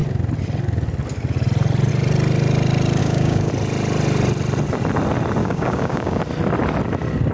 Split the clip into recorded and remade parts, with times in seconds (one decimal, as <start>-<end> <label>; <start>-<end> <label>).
0.0-3.0 recorded; 3.0-3.5 remade; 3.5-5.4 recorded; 5.4-6.2 remade; 6.2-7.3 recorded